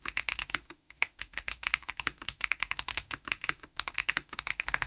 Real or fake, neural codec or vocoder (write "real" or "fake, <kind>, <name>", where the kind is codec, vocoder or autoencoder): fake, autoencoder, DAC-VAE